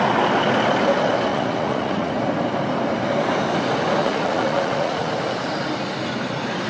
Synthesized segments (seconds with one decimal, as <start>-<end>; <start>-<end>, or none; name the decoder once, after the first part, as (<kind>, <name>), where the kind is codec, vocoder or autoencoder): 1.3-2.1 (vocoder, Vocos); 4.0-5.1